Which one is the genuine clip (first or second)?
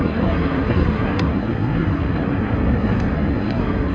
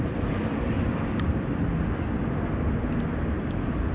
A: second